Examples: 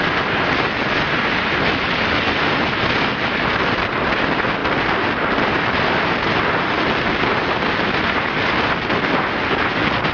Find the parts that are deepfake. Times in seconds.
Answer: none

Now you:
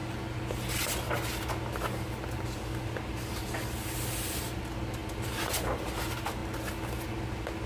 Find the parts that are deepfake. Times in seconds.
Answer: none